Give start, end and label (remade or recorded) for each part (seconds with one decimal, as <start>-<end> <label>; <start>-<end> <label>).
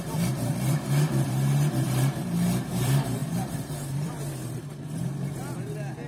0.0-5.4 remade; 5.4-6.1 recorded